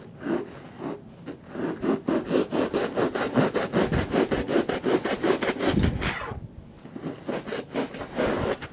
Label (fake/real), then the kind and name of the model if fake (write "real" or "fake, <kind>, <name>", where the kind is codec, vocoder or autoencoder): real